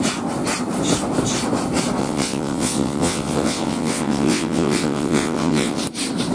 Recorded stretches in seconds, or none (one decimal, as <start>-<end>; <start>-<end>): 0.0-2.0; 5.8-6.3